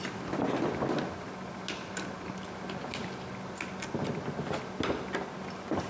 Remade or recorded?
recorded